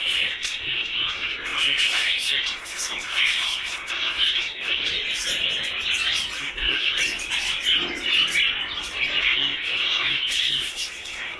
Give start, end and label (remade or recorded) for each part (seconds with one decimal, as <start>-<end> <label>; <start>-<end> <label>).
0.0-4.9 remade; 4.9-6.4 recorded; 6.4-7.0 remade; 7.0-9.2 recorded; 9.2-11.4 remade